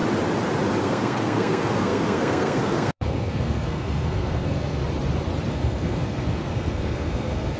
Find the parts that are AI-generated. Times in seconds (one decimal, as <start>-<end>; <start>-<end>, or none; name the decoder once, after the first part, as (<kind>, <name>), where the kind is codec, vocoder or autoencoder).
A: 0.8-4.8 (codec, SNAC); 5.5-7.6